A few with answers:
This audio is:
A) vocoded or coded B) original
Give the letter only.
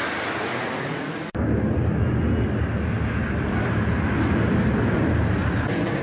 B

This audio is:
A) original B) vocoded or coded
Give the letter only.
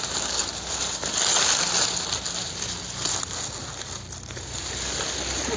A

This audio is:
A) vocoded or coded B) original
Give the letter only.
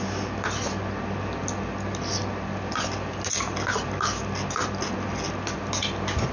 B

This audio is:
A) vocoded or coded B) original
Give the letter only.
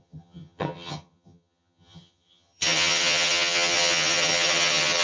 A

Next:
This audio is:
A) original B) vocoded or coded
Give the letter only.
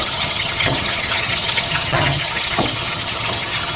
B